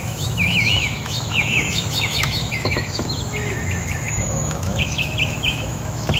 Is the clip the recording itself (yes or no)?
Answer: no